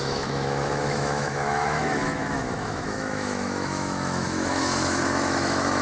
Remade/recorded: remade